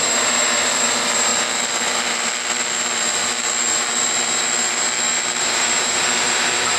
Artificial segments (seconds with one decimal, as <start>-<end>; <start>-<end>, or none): 0.0-1.3; 5.4-6.8